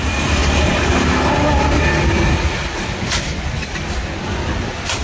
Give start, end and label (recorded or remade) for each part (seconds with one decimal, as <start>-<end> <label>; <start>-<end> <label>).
0.0-5.0 recorded